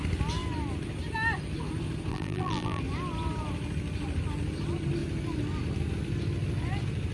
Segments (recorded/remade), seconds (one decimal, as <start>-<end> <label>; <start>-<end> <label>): 0.0-2.1 recorded; 2.1-2.8 remade; 2.8-7.1 recorded

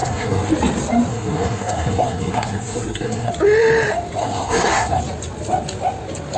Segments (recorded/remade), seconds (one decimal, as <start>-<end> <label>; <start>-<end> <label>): 0.0-0.5 remade; 0.5-1.1 recorded; 1.1-3.3 remade; 3.3-4.2 recorded; 4.2-5.0 remade; 5.0-6.4 recorded